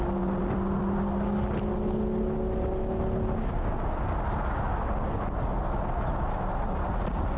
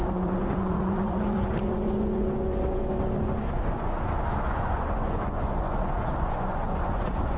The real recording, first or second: first